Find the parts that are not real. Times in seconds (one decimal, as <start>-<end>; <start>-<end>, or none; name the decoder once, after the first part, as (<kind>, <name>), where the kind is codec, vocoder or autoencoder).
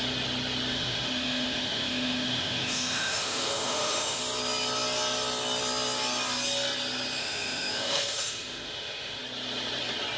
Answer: 0.7-4.2 (autoencoder, DAC-VAE); 7.2-9.2